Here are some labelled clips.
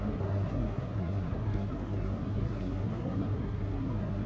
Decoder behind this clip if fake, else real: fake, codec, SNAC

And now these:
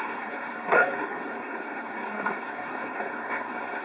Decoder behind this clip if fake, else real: fake, codec, SNAC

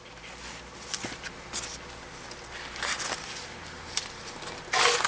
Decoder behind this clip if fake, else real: real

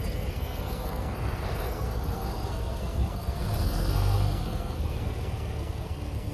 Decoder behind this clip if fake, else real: fake, codec, SNAC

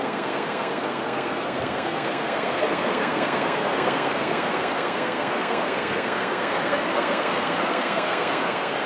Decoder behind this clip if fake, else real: fake, codec, SNAC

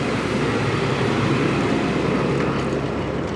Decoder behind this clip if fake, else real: real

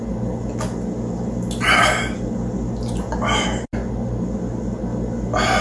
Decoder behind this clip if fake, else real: real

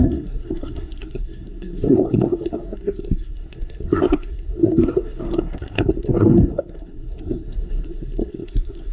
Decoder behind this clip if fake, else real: fake, codec, SNAC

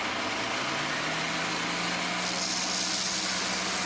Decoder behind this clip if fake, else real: real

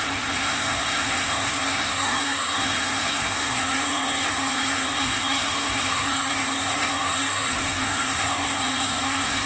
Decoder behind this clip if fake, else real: fake, codec, SNAC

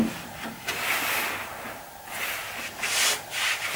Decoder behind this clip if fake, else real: real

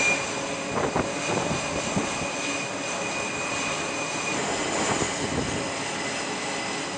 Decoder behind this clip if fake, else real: real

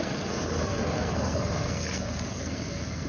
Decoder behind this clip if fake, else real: fake, codec, SNAC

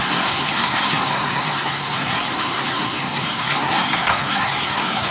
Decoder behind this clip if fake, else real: fake, codec, SNAC